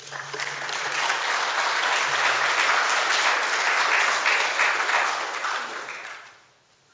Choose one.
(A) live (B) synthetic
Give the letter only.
A